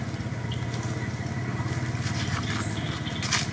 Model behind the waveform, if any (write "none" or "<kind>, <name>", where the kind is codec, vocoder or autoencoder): none